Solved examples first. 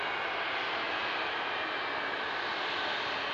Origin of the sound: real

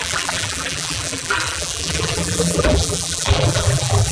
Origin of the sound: fake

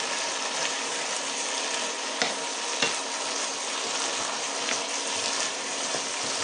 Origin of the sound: real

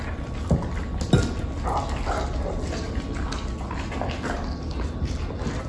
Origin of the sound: real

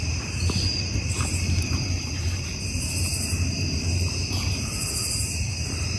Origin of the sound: fake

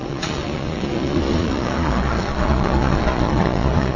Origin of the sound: fake